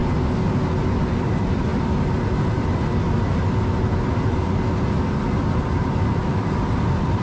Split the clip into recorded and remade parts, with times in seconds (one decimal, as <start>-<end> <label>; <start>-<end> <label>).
0.0-1.1 recorded; 1.1-7.2 remade